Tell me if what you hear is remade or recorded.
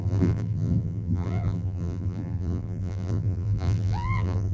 remade